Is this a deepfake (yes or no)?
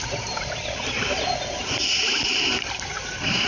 no